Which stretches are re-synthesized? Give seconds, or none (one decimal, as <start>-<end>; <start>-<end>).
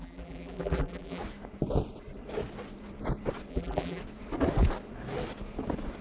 0.0-1.2; 3.5-4.0